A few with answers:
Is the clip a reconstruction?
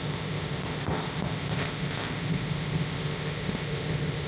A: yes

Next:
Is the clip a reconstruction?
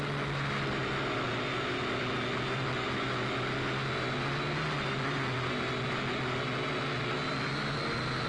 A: no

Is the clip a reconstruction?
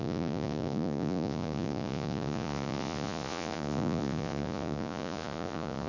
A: yes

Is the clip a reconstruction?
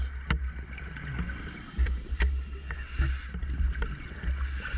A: no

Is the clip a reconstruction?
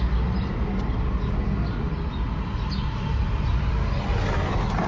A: no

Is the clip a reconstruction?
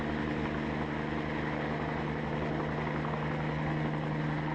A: no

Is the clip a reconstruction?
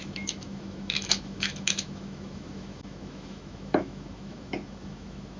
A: yes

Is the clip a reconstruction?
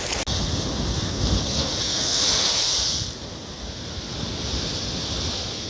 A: no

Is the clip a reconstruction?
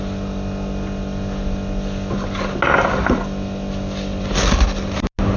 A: no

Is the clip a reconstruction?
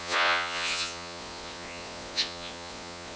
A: yes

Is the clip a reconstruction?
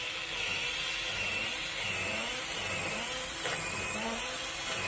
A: no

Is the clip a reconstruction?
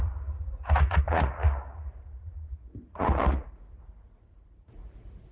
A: yes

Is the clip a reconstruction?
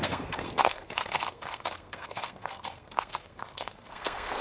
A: yes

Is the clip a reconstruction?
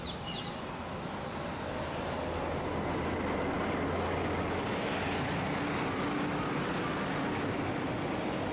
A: no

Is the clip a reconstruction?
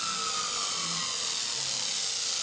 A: no